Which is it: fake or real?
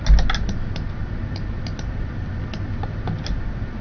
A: real